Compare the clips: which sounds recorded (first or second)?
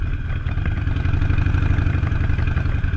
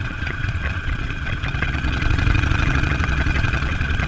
first